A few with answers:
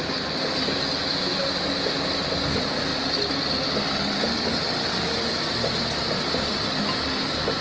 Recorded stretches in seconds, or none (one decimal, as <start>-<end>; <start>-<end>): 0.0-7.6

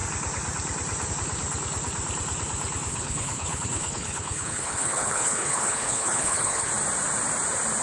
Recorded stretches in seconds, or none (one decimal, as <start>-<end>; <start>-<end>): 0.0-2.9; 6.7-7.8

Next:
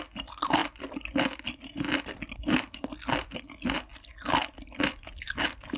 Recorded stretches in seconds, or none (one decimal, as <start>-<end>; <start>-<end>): 0.0-0.6; 3.4-3.9

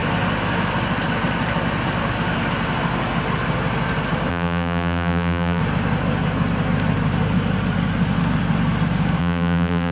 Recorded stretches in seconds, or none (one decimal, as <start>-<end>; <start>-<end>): 0.0-4.3; 5.6-9.2

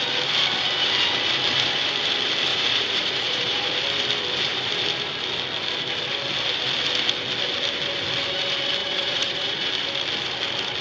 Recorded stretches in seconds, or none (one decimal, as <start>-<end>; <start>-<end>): 0.0-2.5; 3.7-8.8; 9.7-10.8

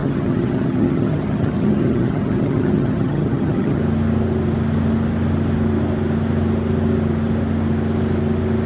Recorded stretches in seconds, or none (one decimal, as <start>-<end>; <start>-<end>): 3.8-8.7

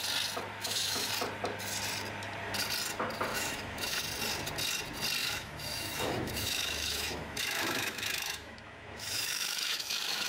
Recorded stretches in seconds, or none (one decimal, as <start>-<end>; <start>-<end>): 0.0-0.6; 1.1-3.3; 4.0-5.2